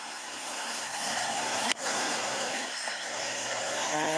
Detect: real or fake fake